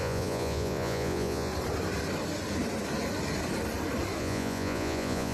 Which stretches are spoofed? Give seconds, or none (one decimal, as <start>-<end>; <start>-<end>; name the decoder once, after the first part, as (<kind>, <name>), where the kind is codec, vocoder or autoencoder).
0.0-1.5 (vocoder, Vocos); 4.2-5.3